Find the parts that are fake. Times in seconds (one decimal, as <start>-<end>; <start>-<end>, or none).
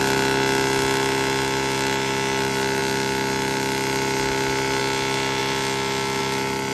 none